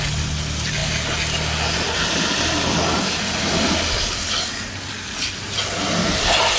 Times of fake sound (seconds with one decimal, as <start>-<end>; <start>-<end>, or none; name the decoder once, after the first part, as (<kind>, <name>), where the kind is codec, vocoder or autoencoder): none